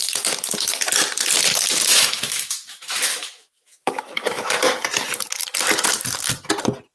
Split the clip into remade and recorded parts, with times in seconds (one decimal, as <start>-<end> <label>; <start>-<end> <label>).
0.0-1.9 recorded; 1.9-4.5 remade; 4.5-6.9 recorded